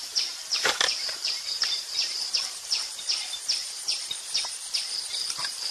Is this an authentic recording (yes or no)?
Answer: no